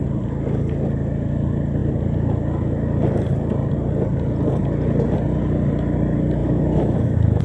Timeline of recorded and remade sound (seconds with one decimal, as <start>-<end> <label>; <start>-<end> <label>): 0.0-6.4 recorded; 6.4-7.4 remade